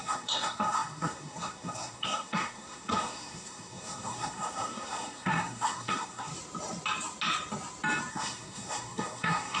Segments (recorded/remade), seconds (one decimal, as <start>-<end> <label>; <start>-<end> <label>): 0.0-6.3 remade; 6.3-8.1 recorded; 8.1-9.6 remade